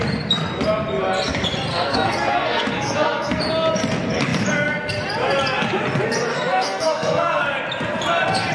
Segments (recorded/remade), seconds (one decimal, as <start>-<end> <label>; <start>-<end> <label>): 0.0-1.7 recorded; 1.7-3.4 remade; 3.4-6.3 recorded; 6.3-7.4 remade; 7.4-8.5 recorded